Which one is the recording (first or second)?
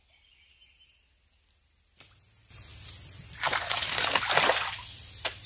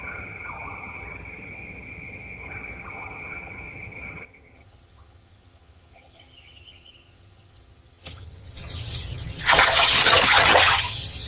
first